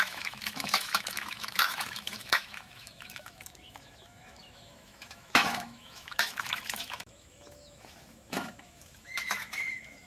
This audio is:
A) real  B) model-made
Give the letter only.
B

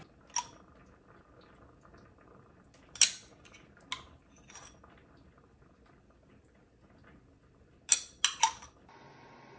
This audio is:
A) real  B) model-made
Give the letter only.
A